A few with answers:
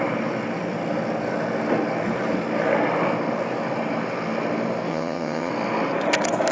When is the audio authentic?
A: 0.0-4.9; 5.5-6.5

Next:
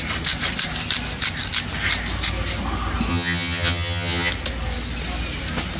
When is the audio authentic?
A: 0.0-3.1; 4.3-5.8

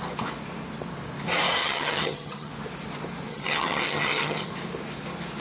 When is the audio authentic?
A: 0.0-1.6; 2.5-3.3; 4.5-5.4

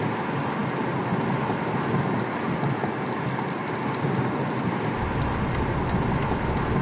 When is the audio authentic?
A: 0.0-6.8